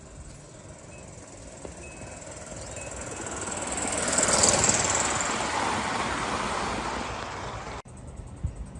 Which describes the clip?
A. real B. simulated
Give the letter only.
A